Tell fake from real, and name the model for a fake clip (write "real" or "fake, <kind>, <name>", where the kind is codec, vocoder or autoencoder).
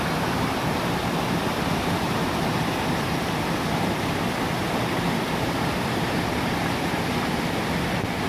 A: real